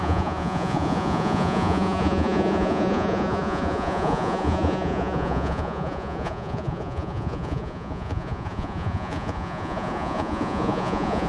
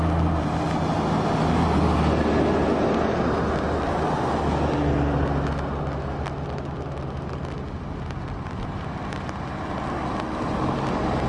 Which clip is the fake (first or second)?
first